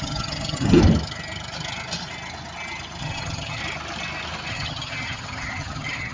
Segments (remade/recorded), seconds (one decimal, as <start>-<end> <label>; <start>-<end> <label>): 0.0-0.8 remade; 0.8-3.0 recorded; 3.0-3.6 remade; 3.6-4.5 recorded; 4.5-6.1 remade